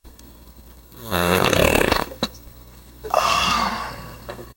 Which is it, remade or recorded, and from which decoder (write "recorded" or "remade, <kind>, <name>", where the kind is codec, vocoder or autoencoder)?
remade, codec, SNAC